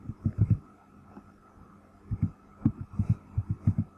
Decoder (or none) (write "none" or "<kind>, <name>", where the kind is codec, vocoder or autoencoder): none